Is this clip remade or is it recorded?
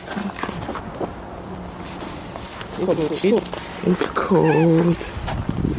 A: recorded